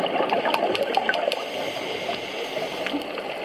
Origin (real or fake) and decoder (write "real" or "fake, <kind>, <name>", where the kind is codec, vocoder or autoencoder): real